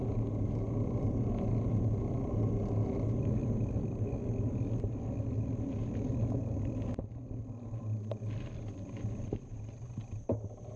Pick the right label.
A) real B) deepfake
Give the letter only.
A